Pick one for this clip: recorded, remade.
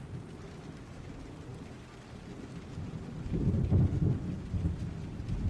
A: recorded